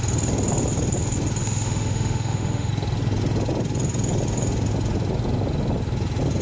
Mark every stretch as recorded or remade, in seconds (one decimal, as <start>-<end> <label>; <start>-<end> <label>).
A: 0.0-1.4 recorded; 1.4-2.7 remade; 2.7-6.4 recorded